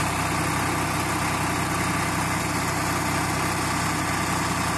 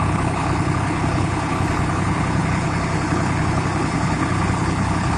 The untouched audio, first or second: first